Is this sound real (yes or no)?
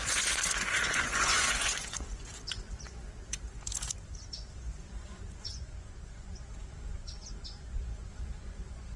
no